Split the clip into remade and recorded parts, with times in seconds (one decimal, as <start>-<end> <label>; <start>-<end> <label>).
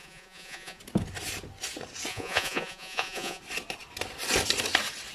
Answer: 0.0-0.8 remade; 0.8-2.1 recorded; 2.1-3.4 remade; 3.4-5.1 recorded